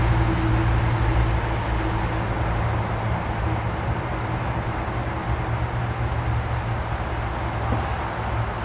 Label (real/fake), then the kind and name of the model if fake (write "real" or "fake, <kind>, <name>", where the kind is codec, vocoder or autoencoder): real